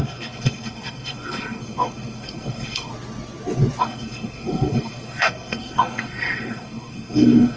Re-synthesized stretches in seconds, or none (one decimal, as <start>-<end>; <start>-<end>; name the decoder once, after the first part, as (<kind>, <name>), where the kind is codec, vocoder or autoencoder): 0.0-2.9 (codec, SNAC); 3.8-7.6